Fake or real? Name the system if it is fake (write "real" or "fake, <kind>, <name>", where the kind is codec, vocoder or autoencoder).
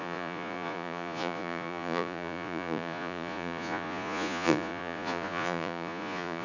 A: fake, vocoder, Vocos